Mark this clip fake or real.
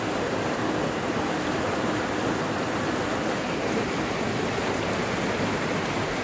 real